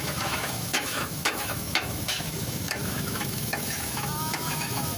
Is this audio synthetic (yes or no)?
yes